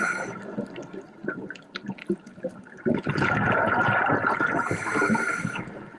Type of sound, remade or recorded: recorded